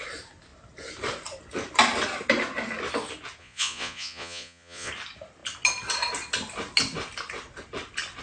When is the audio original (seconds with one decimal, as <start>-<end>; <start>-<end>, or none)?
0.0-3.4; 4.9-8.2